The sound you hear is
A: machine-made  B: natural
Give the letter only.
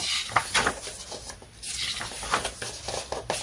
B